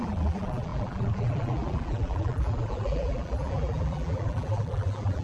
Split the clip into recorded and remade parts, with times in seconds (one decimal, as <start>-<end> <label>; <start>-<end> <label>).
0.0-5.2 remade